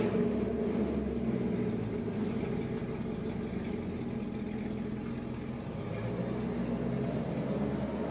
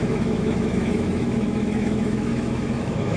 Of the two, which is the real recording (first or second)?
first